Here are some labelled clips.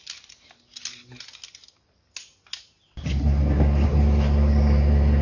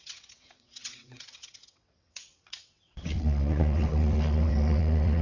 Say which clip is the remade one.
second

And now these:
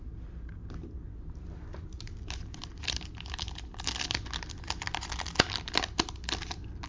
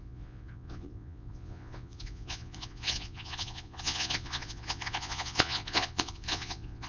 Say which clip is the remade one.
second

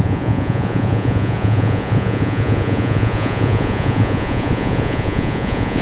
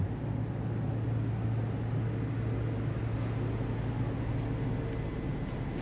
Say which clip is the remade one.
first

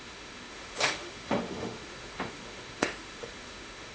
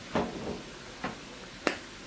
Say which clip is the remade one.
first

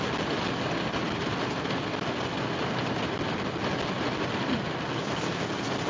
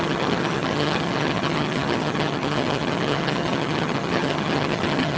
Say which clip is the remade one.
second